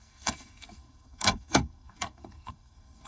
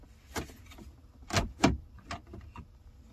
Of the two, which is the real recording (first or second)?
second